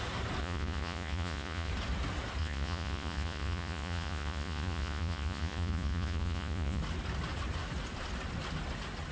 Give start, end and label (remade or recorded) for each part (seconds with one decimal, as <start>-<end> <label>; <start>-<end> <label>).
0.0-0.4 recorded; 0.4-1.7 remade; 1.7-2.4 recorded; 2.4-6.8 remade; 6.8-9.1 recorded